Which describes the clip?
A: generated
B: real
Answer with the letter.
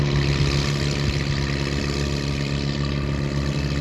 B